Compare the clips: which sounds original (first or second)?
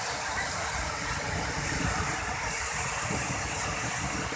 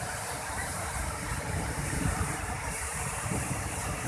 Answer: first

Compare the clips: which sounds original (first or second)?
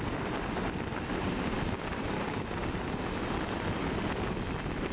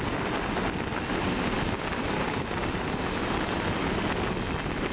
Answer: second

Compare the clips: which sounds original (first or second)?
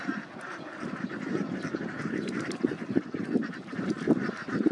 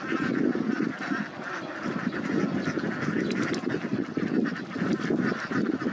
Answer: second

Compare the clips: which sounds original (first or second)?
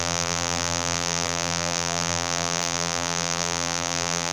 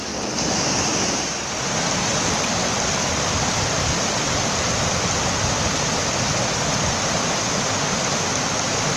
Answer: second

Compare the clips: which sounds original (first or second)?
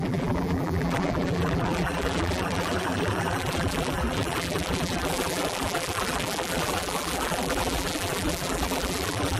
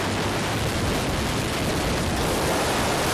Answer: second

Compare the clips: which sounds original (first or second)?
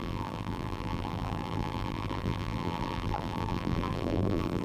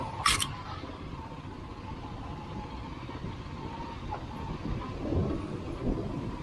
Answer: second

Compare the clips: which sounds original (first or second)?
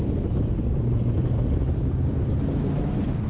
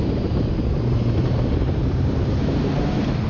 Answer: first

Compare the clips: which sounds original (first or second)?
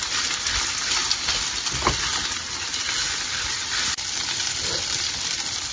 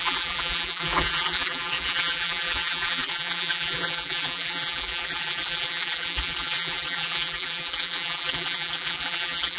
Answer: first